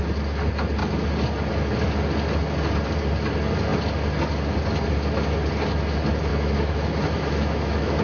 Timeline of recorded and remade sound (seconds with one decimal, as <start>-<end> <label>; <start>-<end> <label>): 0.0-6.3 recorded; 6.3-8.0 remade